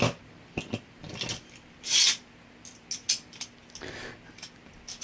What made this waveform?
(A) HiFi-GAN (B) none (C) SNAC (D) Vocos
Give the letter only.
B